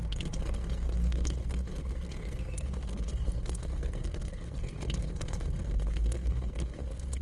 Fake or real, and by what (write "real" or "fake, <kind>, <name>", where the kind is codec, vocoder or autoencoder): fake, codec, SNAC